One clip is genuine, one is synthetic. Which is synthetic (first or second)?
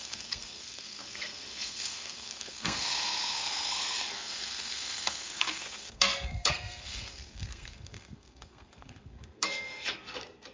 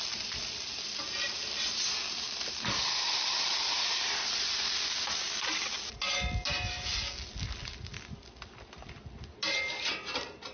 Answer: first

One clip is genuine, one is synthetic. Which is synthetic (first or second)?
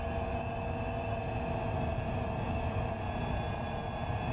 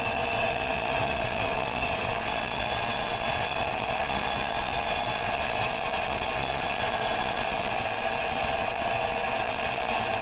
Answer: second